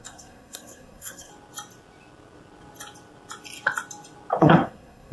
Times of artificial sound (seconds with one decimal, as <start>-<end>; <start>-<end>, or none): 0.0-1.3; 4.4-5.1